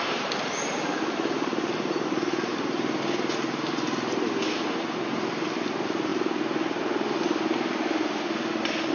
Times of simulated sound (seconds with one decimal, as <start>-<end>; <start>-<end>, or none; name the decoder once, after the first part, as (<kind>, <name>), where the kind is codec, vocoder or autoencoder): none